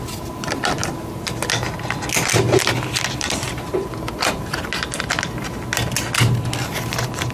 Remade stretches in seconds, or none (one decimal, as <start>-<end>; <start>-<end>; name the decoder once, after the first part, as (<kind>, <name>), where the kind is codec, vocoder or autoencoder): none